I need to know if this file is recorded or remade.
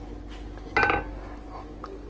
recorded